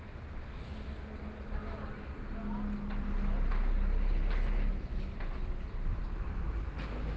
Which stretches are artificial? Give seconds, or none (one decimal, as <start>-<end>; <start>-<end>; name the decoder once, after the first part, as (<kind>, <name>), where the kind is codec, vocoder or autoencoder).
none